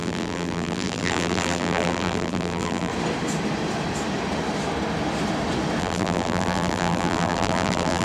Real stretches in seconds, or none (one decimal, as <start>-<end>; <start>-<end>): 2.9-5.8